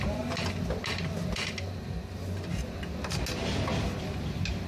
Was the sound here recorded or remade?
recorded